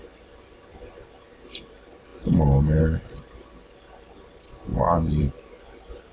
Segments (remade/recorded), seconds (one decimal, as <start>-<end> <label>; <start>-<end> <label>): 0.0-2.1 remade; 2.1-2.8 recorded; 2.8-6.1 remade